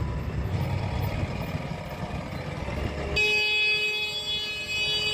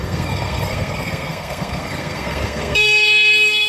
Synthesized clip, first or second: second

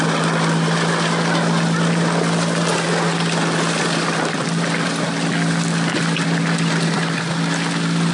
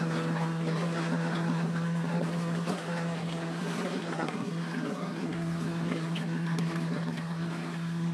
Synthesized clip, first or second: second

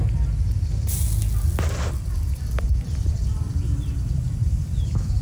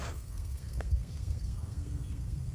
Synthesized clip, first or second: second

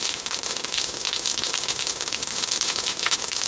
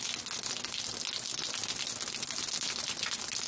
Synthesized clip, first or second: first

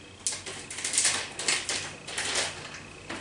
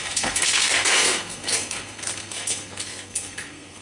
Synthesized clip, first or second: second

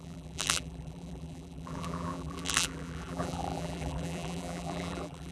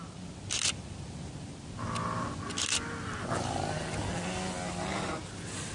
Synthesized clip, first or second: first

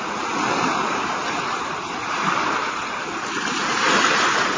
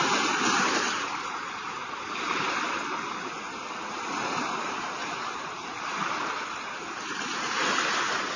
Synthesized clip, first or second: second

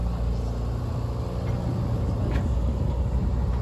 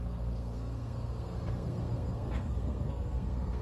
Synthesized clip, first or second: second